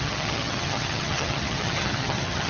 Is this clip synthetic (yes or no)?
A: yes